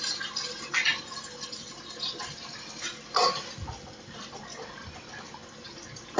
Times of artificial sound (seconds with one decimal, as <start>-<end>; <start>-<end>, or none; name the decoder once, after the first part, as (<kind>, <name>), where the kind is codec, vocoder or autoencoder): none